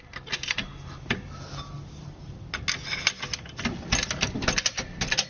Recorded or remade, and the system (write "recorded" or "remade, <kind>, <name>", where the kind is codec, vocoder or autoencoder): recorded